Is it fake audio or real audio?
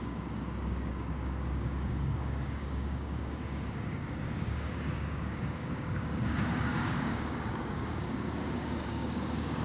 fake